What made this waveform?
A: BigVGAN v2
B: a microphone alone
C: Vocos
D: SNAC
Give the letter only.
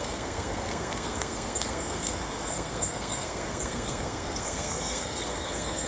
D